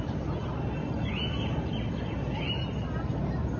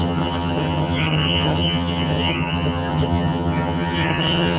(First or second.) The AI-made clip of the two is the second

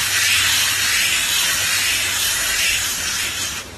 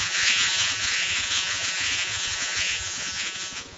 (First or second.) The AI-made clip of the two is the second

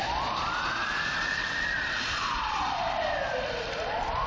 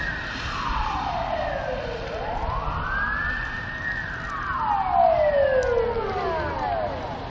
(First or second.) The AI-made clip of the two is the first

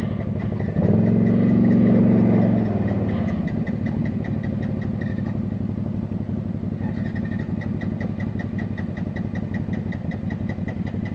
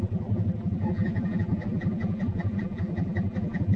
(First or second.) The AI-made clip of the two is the second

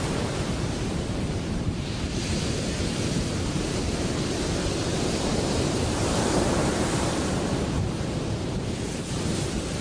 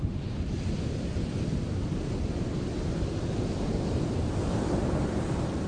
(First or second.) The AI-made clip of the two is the first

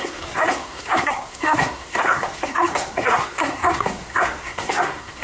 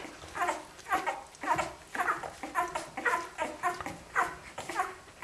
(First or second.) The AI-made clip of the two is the first